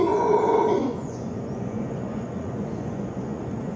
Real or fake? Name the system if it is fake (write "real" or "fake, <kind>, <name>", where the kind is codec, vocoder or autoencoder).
fake, vocoder, Vocos